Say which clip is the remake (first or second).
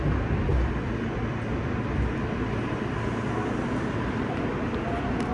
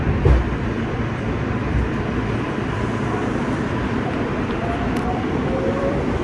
second